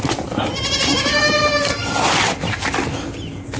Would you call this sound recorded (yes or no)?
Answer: yes